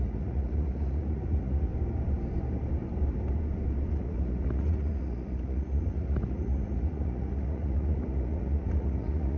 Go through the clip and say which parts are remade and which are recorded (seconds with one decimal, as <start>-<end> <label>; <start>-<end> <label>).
0.0-1.7 remade; 1.7-3.9 recorded; 3.9-9.4 remade